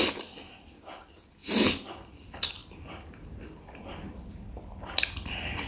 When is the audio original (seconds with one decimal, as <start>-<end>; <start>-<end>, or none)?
0.0-1.4; 1.9-5.7